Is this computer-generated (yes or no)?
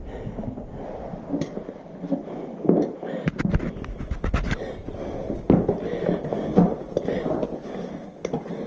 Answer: no